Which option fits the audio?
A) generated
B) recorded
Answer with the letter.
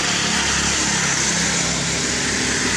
B